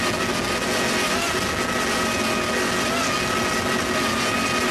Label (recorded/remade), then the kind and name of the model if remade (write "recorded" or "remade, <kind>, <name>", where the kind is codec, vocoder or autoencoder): recorded